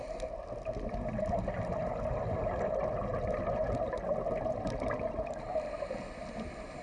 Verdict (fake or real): real